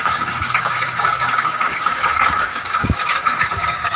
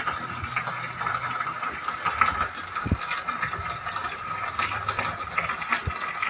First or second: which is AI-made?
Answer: first